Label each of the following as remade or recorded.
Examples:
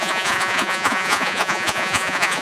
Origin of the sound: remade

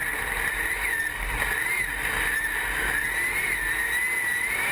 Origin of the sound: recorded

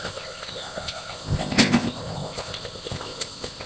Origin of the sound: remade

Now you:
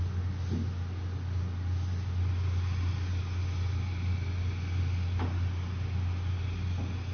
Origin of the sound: recorded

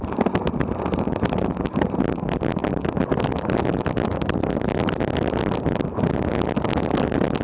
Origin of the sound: recorded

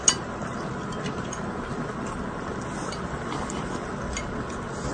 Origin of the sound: recorded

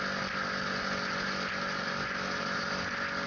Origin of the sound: recorded